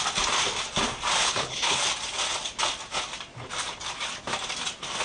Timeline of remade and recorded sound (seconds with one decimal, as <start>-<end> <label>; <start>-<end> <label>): 0.0-1.2 recorded; 1.2-1.8 remade; 1.8-5.0 recorded